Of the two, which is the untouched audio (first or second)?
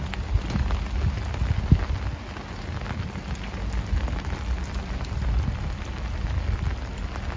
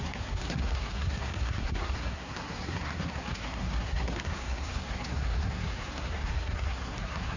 first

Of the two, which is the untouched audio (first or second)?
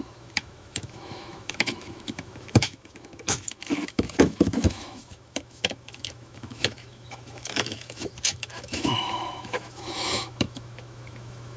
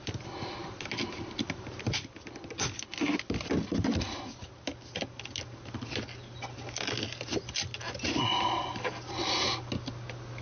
second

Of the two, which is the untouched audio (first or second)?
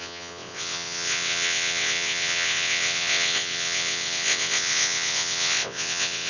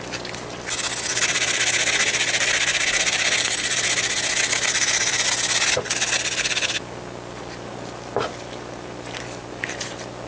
second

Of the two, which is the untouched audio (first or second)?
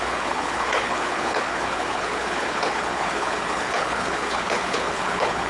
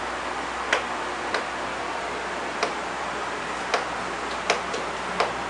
second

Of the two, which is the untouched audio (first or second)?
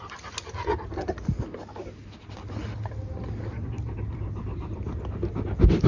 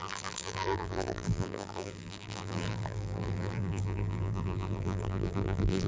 first